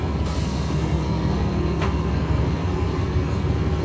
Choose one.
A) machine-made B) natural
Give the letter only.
A